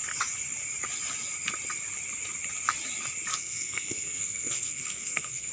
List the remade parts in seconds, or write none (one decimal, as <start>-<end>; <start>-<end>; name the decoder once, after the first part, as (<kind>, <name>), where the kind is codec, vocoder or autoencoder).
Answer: 3.3-5.5 (codec, SNAC)